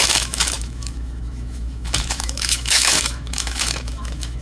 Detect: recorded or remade remade